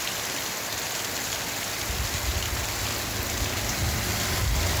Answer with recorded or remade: recorded